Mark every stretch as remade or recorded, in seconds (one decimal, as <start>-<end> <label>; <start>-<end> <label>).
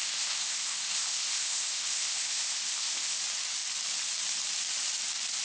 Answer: 0.0-3.2 remade; 3.2-5.4 recorded